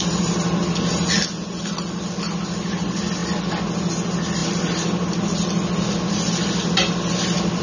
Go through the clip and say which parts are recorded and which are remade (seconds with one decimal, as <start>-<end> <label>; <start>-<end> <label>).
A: 0.0-7.6 recorded